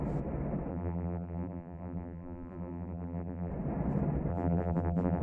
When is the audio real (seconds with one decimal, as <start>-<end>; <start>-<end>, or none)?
0.0-0.7; 3.5-4.3